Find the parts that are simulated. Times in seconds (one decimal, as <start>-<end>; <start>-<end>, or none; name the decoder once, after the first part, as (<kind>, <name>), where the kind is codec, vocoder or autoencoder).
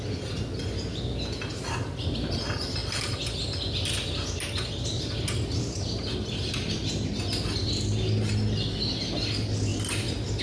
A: none